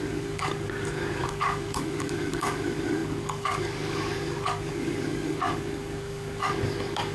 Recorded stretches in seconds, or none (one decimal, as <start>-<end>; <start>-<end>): none